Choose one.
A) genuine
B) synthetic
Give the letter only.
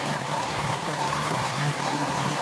B